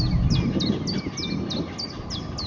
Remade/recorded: recorded